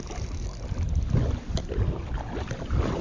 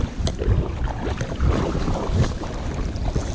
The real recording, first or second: first